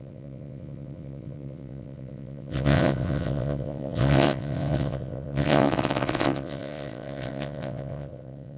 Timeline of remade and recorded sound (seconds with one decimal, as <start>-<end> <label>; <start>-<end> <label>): 0.0-8.6 remade